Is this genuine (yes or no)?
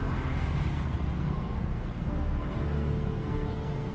no